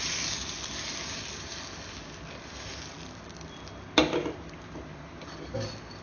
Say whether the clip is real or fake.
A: real